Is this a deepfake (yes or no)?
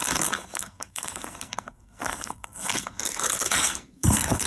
yes